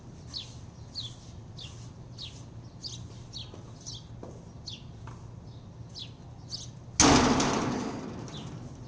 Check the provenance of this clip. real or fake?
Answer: real